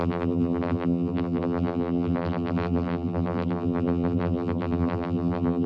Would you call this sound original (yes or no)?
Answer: no